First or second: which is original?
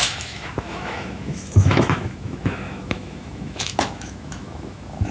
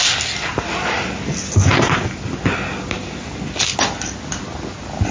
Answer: second